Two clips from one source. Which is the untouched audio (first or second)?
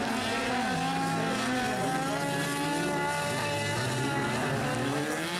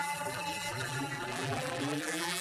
first